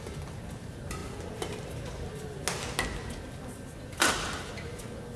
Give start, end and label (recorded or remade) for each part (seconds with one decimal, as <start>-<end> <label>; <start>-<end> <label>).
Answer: 0.0-5.2 recorded